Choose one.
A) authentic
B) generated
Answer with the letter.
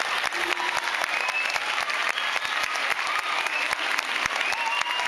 A